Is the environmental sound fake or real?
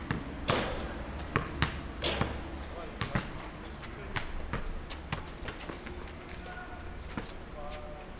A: real